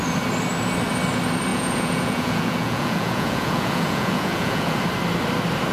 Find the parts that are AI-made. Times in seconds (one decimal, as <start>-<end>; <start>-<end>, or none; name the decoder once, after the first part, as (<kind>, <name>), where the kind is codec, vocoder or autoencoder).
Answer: 1.5-4.8 (vocoder, Vocos)